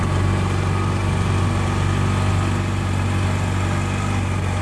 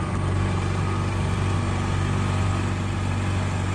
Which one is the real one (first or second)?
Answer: first